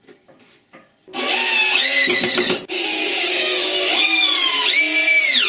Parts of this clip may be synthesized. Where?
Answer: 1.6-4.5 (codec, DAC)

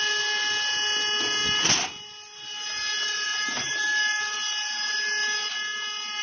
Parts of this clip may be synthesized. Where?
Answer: none

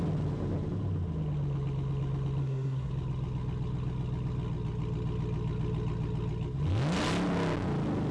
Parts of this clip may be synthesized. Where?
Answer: 2.4-2.9 (codec, SNAC)

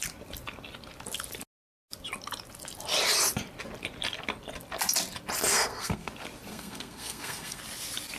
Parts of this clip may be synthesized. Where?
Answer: 5.5-6.1 (codec, SNAC); 6.5-7.6

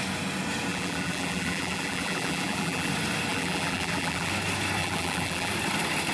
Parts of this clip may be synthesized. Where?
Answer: 0.7-2.9 (vocoder, BigVGAN v2); 3.3-4.3; 4.8-5.5